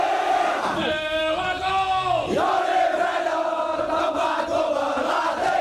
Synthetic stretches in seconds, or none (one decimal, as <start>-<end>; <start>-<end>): none

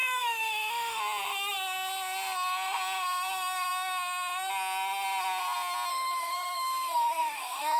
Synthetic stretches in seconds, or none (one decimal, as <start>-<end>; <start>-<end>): 0.0-1.0; 5.9-7.8

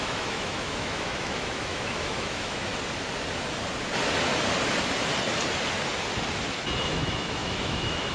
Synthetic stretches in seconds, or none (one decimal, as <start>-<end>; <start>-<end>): 0.0-2.7; 6.8-8.1